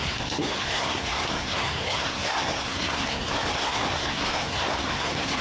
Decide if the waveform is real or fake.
fake